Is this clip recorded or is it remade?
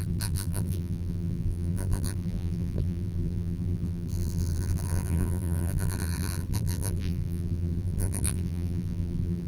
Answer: remade